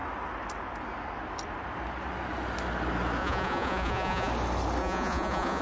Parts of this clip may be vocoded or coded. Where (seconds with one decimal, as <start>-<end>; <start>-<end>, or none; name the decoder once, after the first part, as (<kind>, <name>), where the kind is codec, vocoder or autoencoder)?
3.2-4.3 (vocoder, Vocos); 4.8-5.6